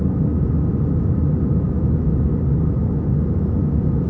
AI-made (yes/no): no